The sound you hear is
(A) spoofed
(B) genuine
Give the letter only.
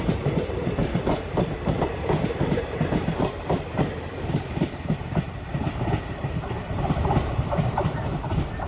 A